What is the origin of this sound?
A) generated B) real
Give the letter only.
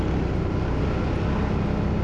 B